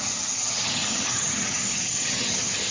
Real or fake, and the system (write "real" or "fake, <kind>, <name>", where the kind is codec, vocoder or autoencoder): fake, vocoder, HiFi-GAN